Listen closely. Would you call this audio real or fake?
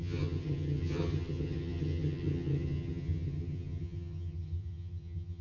fake